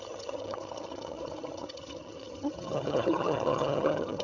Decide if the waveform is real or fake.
fake